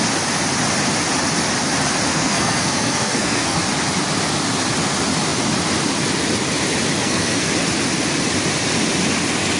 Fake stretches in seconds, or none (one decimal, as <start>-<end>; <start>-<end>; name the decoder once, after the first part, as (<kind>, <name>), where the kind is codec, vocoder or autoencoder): 2.1-3.6 (codec, SNAC); 7.0-7.5